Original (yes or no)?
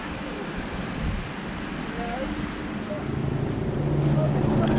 yes